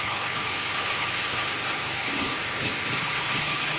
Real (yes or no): no